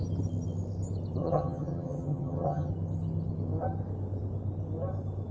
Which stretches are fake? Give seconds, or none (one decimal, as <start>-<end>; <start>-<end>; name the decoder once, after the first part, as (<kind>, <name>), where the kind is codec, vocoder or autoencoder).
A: 1.2-2.7 (vocoder, HiFi-GAN)